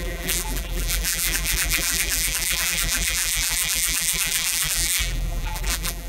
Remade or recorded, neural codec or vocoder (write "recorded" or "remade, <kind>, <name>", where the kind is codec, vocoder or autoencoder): remade, vocoder, BigVGAN v2